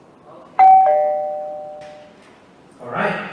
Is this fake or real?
real